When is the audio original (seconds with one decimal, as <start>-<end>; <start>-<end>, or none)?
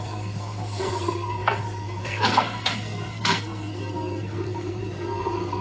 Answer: none